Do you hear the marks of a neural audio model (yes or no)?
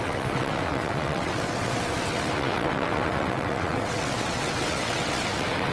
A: yes